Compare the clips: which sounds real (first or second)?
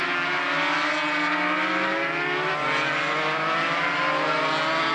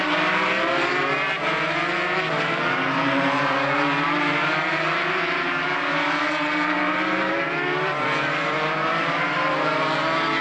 first